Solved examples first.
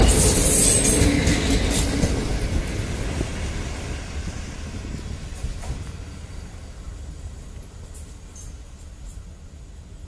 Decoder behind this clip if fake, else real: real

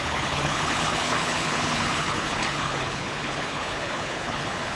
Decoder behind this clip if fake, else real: fake, codec, HILCodec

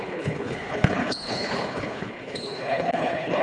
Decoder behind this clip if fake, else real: fake, codec, HILCodec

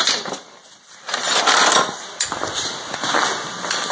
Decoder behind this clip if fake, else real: real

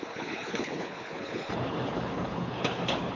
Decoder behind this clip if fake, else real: fake, codec, HILCodec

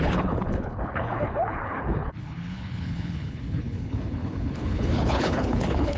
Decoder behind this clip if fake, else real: fake, codec, HILCodec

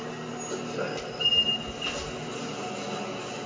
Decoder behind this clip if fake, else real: real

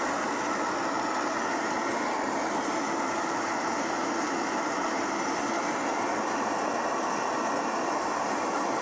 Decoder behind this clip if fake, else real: real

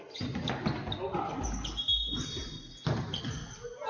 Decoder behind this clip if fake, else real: real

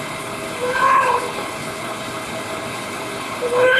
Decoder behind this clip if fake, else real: fake, codec, HILCodec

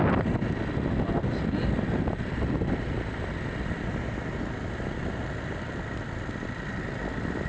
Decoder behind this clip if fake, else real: real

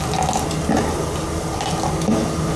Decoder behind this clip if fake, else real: real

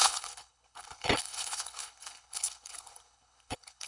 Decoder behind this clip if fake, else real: fake, codec, HILCodec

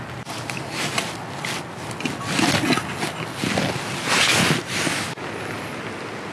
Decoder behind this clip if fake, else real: real